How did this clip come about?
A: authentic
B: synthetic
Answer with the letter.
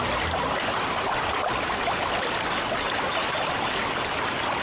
A